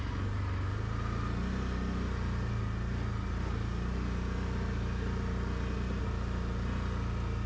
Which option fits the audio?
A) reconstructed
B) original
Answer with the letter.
B